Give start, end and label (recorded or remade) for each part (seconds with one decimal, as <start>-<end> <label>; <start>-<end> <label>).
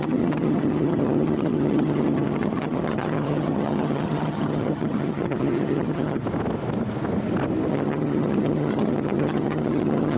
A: 0.0-6.2 remade; 6.2-7.7 recorded; 7.7-10.2 remade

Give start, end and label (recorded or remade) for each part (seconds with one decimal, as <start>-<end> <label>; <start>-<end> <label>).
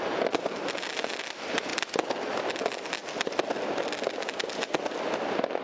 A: 0.0-5.6 recorded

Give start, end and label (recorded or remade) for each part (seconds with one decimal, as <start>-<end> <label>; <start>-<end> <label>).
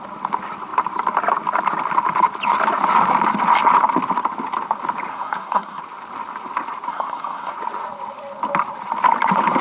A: 0.0-5.1 recorded; 5.1-5.8 remade; 5.8-6.9 recorded; 6.9-7.5 remade; 7.5-9.6 recorded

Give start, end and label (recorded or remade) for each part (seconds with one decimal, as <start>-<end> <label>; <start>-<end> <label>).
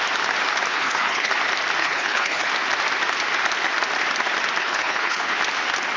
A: 0.0-0.7 recorded; 0.7-1.3 remade; 1.3-1.8 recorded; 1.8-2.5 remade; 2.5-4.6 recorded; 4.6-5.4 remade; 5.4-6.0 recorded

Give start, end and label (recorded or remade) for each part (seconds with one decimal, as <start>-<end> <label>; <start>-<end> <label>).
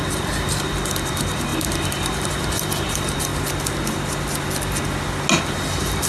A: 0.0-3.3 remade; 3.3-5.4 recorded; 5.4-6.1 remade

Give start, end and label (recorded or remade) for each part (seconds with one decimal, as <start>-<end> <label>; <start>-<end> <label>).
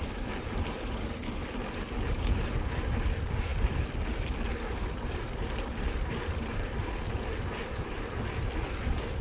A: 0.0-9.2 remade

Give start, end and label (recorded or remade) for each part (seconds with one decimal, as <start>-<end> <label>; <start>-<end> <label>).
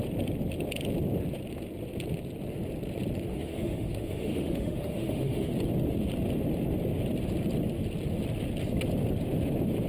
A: 0.0-3.3 recorded; 3.3-5.5 remade; 5.5-9.9 recorded